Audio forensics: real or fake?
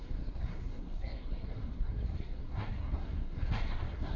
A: fake